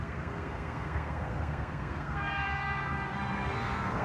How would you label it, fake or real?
fake